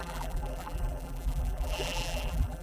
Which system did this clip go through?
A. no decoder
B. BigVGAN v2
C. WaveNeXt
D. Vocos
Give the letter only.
B